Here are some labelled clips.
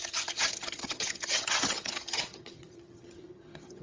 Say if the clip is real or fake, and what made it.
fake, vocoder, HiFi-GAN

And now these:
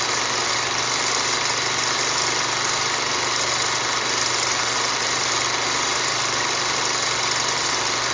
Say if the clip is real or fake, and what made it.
real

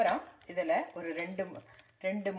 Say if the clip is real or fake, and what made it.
real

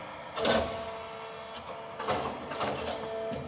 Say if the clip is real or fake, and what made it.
real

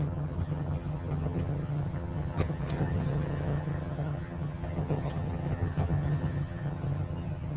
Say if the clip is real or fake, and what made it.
fake, vocoder, HiFi-GAN